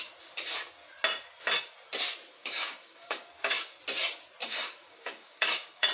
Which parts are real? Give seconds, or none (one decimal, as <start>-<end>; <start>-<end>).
0.0-2.4; 3.8-4.4